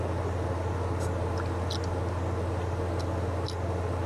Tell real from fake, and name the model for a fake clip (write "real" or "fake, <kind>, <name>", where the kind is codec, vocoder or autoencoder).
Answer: real